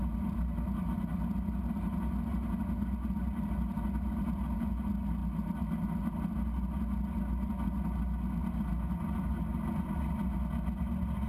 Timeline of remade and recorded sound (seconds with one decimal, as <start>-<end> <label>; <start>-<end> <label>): 0.0-11.3 recorded